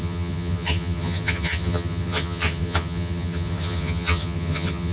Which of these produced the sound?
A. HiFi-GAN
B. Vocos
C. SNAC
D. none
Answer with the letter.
A